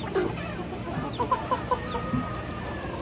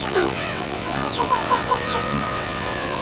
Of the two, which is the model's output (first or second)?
second